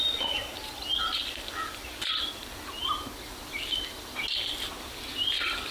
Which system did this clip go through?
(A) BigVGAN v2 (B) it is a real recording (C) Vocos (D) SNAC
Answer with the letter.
B